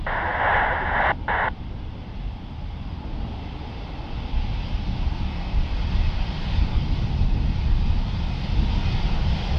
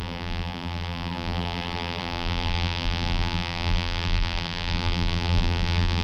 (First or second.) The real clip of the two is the first